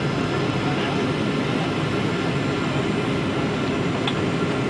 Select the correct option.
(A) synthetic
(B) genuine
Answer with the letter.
B